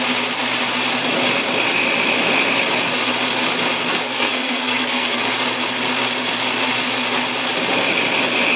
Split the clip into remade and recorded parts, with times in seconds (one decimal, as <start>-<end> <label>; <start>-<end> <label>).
0.0-3.9 recorded; 3.9-5.3 remade; 5.3-8.6 recorded